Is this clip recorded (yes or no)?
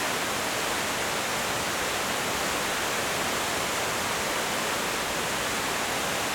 yes